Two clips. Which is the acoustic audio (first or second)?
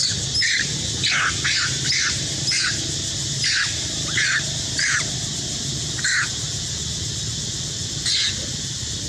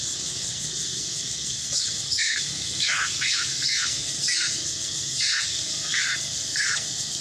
first